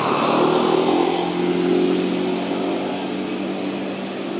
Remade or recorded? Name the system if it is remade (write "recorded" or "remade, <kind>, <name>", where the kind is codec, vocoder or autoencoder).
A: recorded